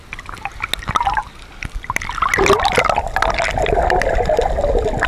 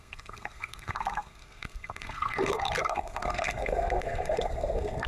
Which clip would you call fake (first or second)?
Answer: second